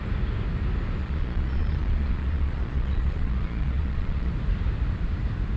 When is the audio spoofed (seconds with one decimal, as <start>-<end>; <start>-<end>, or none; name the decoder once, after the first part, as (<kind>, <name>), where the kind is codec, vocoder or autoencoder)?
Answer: 1.0-4.3 (vocoder, Vocos)